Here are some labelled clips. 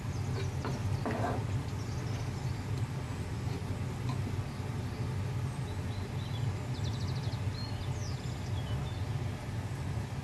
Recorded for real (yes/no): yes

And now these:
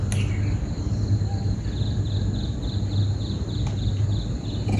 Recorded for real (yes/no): yes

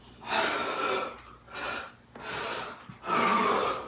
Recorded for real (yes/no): yes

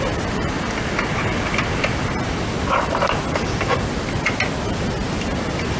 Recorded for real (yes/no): yes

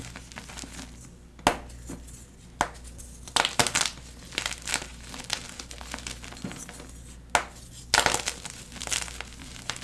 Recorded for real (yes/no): yes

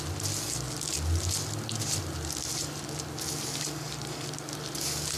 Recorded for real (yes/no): yes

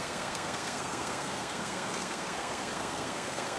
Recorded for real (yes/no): no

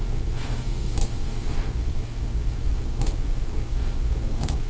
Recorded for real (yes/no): no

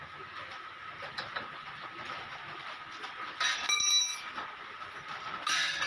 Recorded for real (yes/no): yes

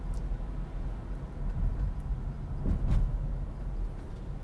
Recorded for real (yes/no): yes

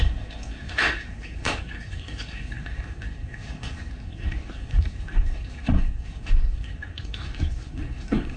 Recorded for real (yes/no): no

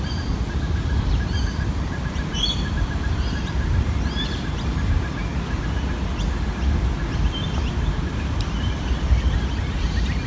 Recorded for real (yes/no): yes